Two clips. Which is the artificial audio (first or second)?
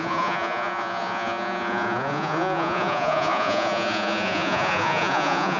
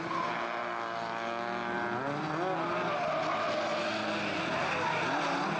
first